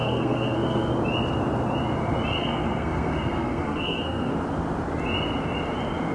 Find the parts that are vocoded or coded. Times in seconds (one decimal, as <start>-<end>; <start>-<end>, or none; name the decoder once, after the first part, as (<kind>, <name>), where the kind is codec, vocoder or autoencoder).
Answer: 0.0-0.9 (codec, SNAC); 2.4-4.3